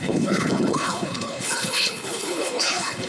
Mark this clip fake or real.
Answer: fake